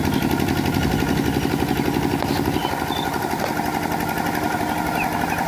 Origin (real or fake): real